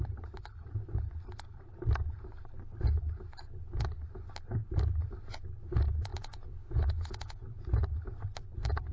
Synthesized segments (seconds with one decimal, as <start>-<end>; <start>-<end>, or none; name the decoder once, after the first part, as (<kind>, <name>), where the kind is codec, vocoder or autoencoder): 6.1-7.8 (vocoder, Vocos)